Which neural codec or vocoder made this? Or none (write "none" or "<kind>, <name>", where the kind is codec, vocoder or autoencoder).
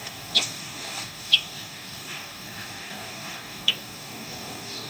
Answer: codec, DAC